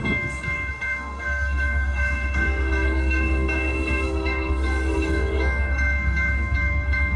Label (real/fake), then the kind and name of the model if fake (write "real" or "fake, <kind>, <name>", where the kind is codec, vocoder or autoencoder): fake, codec, SNAC